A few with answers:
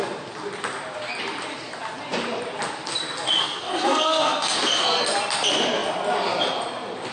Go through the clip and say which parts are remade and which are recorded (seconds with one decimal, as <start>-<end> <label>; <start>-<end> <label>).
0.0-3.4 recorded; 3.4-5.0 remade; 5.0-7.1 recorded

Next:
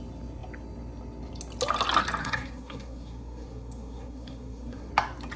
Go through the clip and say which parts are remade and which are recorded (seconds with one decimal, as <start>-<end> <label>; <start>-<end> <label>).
0.0-2.2 recorded; 2.2-4.9 remade; 4.9-5.4 recorded

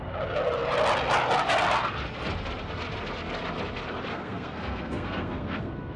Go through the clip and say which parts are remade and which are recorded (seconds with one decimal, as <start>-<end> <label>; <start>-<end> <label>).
0.0-4.1 recorded; 4.1-6.0 remade

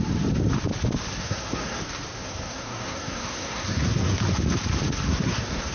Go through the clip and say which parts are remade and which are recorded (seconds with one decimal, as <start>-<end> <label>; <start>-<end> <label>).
0.0-1.2 recorded; 1.2-1.8 remade; 1.8-2.2 recorded; 2.2-4.2 remade; 4.2-5.1 recorded; 5.1-5.7 remade

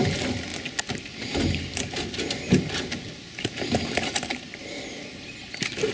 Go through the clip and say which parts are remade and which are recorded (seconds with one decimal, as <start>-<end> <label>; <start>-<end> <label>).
0.0-5.9 recorded

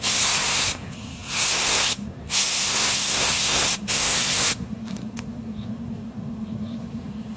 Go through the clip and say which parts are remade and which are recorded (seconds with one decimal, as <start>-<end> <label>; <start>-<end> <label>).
0.0-7.4 remade

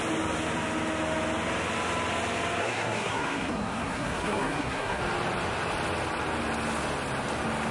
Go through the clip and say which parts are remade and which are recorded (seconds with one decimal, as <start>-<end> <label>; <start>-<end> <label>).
0.0-2.6 recorded; 2.6-5.0 remade; 5.0-7.7 recorded